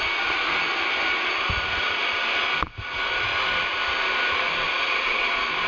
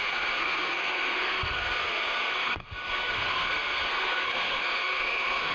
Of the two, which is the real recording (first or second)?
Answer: first